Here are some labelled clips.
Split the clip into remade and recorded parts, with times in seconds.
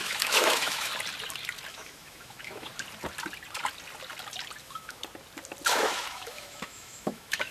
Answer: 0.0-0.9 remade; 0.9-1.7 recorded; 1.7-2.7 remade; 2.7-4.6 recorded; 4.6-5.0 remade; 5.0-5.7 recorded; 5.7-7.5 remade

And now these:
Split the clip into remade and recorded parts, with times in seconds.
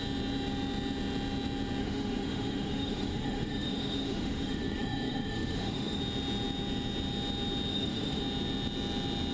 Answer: 0.0-1.8 recorded; 1.8-6.0 remade; 6.0-7.7 recorded; 7.7-8.2 remade; 8.2-9.3 recorded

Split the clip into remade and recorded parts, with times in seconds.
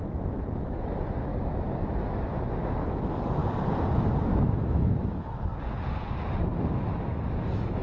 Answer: 0.0-1.3 remade; 1.3-2.0 recorded; 2.0-3.4 remade; 3.4-4.3 recorded; 4.3-5.5 remade; 5.5-6.7 recorded; 6.7-7.8 remade